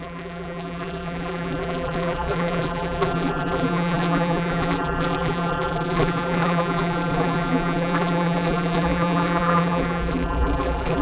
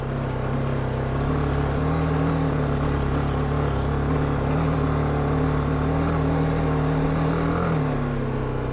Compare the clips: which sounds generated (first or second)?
first